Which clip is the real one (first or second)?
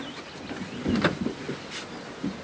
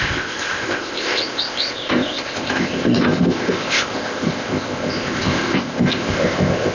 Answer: first